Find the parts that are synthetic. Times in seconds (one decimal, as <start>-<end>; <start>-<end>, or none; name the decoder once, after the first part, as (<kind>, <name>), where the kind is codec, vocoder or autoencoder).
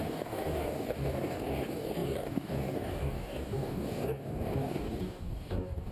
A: 0.0-5.9 (codec, DAC)